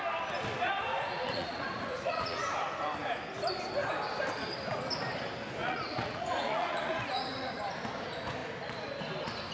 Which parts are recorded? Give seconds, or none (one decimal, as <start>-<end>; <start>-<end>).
0.0-0.9; 2.4-5.6; 7.6-9.5